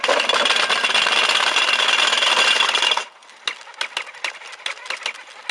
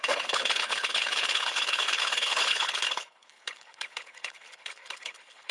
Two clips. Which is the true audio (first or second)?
first